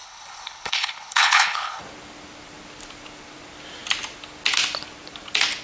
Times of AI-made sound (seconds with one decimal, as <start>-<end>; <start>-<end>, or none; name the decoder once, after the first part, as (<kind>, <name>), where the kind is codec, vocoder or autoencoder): 0.0-1.8 (codec, HILCodec)